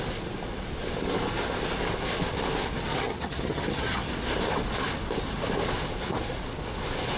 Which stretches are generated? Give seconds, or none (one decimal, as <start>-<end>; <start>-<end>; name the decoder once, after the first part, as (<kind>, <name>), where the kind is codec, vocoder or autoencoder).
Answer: 2.9-4.1 (vocoder, HiFi-GAN)